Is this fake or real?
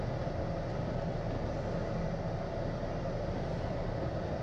real